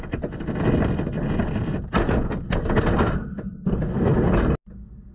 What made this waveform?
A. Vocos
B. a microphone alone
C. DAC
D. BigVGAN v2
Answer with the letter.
B